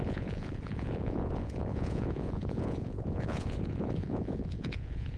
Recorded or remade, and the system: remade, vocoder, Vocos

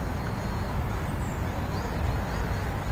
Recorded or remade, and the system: recorded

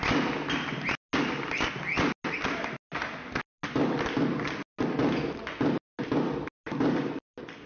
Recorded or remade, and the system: recorded